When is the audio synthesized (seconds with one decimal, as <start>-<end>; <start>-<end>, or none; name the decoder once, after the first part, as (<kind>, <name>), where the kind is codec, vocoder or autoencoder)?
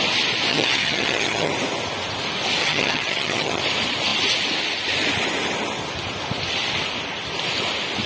0.5-1.5 (vocoder, HiFi-GAN); 2.6-3.6